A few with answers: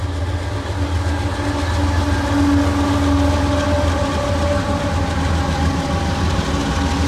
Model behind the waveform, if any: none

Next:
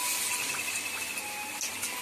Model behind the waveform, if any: none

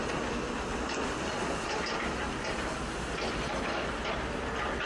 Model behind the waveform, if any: none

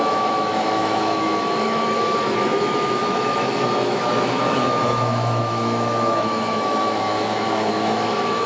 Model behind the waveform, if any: autoencoder, DAC-VAE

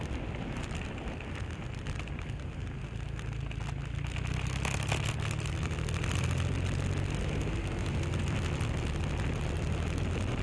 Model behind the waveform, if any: none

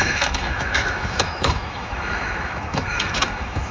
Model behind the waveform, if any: autoencoder, DAC-VAE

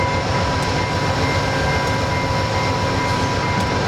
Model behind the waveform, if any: none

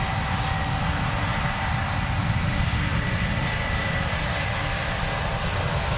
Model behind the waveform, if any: none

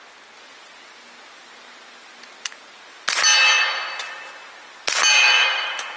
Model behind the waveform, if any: none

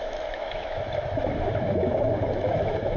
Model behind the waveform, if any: autoencoder, DAC-VAE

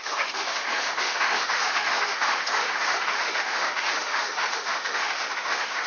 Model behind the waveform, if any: autoencoder, DAC-VAE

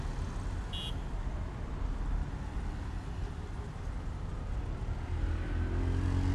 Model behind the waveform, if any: none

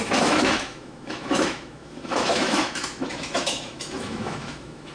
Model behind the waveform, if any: autoencoder, DAC-VAE